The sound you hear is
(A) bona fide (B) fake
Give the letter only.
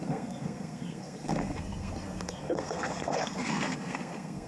B